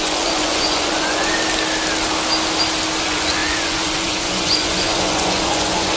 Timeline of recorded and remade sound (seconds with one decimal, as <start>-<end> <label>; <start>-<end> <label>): 0.0-1.3 remade; 1.3-3.0 recorded; 3.0-6.0 remade